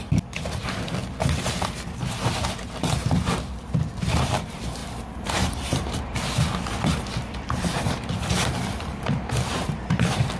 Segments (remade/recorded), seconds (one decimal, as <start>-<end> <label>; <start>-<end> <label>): 0.0-1.0 remade; 1.0-4.0 recorded; 4.0-4.8 remade; 4.8-7.4 recorded; 7.4-10.4 remade